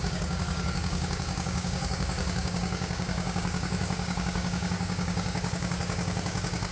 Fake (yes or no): yes